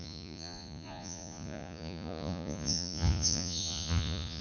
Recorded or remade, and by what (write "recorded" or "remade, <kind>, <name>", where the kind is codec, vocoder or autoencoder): remade, vocoder, Vocos